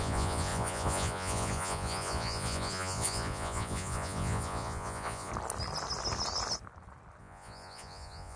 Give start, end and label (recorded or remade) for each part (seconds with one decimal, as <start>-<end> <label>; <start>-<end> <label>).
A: 0.0-5.3 remade; 5.3-7.2 recorded; 7.2-8.4 remade